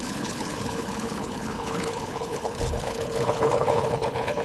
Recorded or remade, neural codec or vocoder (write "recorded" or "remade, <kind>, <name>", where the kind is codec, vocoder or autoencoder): remade, codec, HILCodec